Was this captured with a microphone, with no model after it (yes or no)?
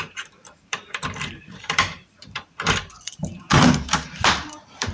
no